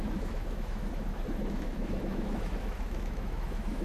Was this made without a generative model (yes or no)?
no